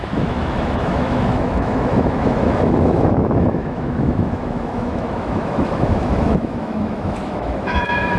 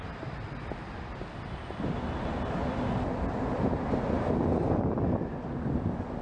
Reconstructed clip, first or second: first